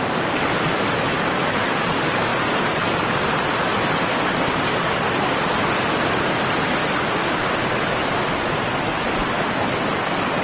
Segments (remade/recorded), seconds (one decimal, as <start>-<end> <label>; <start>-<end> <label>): 0.0-10.4 recorded